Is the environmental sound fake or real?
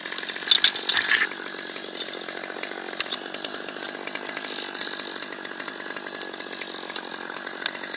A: real